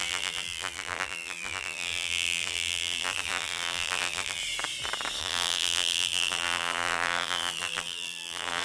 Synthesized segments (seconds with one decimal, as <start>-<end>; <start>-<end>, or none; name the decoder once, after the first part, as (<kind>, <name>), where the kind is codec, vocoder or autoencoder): 0.0-4.4 (vocoder, BigVGAN v2); 5.2-8.6